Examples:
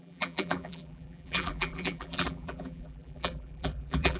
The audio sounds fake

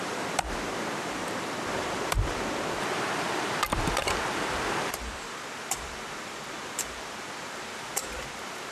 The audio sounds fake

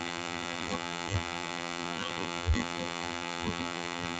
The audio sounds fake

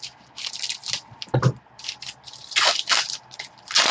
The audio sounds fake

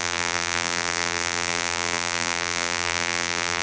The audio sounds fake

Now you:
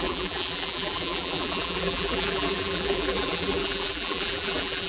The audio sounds fake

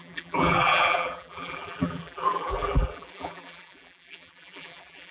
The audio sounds fake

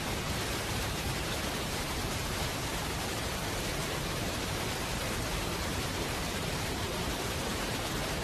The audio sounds fake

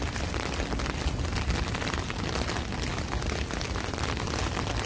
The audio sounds fake